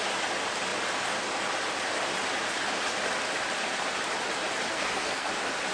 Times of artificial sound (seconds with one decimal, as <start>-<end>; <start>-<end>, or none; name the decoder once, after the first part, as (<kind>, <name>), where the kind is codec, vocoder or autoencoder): 4.7-5.3 (codec, SNAC)